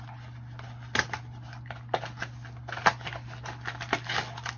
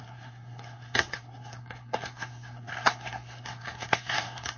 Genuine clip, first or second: first